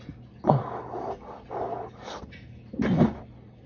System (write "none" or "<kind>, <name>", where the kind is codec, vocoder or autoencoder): none